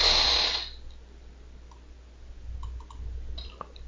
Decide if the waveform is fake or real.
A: real